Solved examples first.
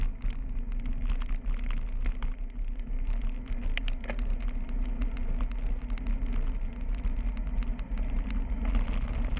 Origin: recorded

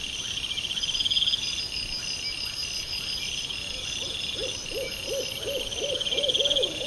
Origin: recorded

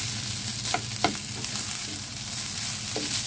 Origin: recorded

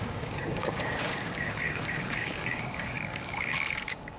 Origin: remade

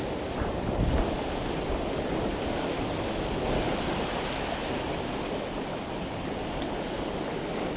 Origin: recorded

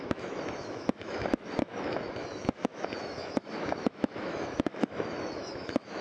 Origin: remade